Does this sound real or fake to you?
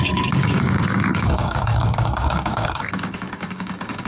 fake